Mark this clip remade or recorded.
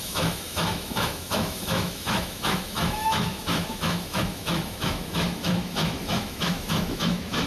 remade